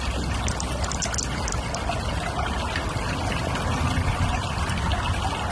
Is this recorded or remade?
recorded